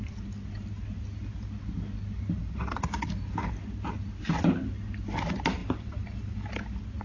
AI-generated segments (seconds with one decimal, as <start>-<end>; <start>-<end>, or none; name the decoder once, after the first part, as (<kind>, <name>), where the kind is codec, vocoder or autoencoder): 2.4-3.5 (vocoder, BigVGAN v2); 5.6-6.5